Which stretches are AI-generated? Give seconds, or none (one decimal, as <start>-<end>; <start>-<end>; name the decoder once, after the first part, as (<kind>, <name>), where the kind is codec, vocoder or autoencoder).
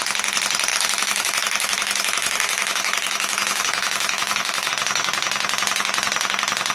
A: 0.7-4.7 (autoencoder, DAC-VAE)